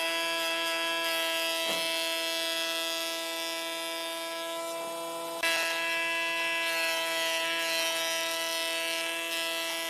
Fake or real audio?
real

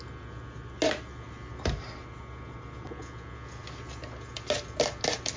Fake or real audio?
real